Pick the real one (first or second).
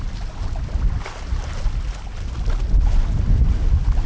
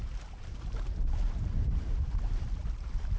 first